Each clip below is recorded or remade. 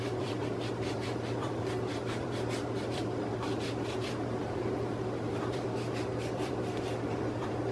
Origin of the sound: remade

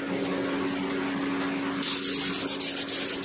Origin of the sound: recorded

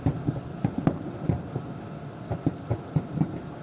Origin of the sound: recorded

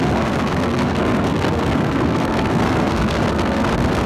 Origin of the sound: remade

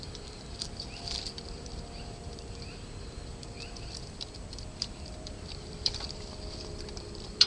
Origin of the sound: remade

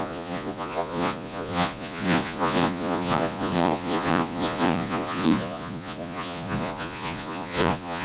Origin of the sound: remade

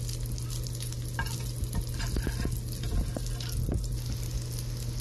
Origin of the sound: recorded